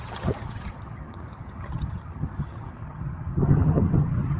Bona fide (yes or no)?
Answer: no